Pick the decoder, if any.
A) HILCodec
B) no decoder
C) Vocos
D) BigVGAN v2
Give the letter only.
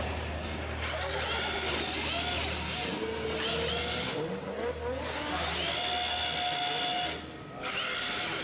B